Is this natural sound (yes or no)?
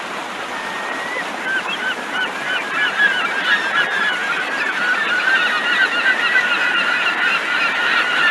no